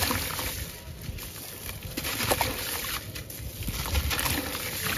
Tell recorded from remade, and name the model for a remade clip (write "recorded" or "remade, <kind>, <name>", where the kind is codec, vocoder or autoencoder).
recorded